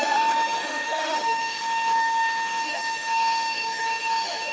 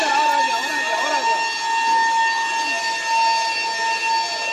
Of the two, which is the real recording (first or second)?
second